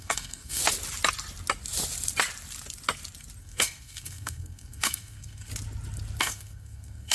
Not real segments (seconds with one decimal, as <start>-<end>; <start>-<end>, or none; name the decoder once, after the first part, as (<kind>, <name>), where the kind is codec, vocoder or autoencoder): 0.0-0.6 (codec, SNAC); 3.4-5.5; 6.2-7.1